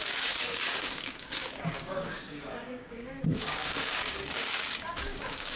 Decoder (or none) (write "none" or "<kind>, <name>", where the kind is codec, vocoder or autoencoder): codec, DAC